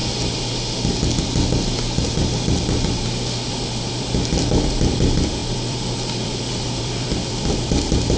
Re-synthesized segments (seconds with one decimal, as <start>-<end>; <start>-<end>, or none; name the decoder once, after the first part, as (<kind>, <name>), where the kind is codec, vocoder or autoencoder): 3.5-8.2 (vocoder, BigVGAN v2)